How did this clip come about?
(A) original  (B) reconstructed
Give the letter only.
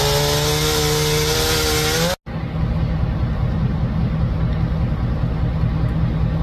A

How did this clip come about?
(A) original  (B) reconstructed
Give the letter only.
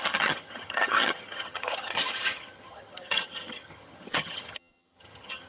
B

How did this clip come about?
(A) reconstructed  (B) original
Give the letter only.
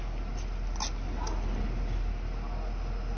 B